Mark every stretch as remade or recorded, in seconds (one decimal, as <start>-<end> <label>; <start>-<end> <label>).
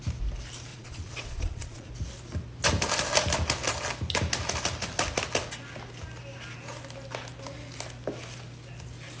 0.0-0.7 recorded; 0.7-1.9 remade; 1.9-9.2 recorded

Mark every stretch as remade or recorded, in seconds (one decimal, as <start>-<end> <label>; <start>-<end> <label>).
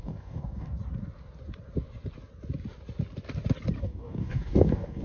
0.0-0.8 remade; 0.8-3.8 recorded; 3.8-5.0 remade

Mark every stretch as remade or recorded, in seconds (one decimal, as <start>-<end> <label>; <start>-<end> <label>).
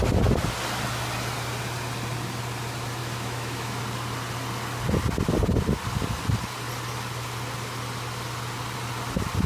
0.0-3.0 recorded; 3.0-3.8 remade; 3.8-9.5 recorded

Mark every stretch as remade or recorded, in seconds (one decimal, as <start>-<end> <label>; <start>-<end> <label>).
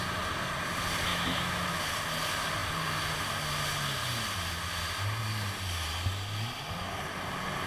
0.0-1.1 recorded; 1.1-1.8 remade; 1.8-7.7 recorded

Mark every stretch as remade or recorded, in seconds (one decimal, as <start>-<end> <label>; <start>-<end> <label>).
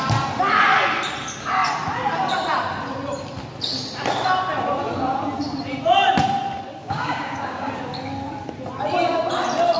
0.0-6.8 recorded; 6.8-7.7 remade; 7.7-9.8 recorded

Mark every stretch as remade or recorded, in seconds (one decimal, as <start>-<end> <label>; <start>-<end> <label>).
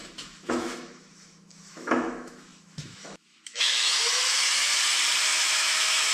0.0-4.7 remade; 4.7-5.2 recorded; 5.2-6.1 remade